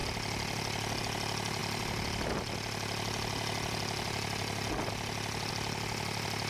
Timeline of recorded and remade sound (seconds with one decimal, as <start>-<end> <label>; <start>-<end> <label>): 0.0-6.5 recorded